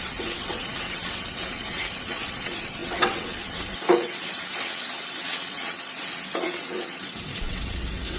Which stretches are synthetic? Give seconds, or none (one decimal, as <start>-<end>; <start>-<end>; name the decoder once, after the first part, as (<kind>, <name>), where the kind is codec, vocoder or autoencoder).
0.0-8.2 (vocoder, WaveNeXt)